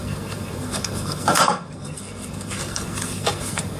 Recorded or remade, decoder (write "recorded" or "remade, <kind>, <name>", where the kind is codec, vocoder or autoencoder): remade, codec, SNAC